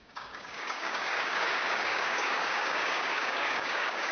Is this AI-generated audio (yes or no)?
yes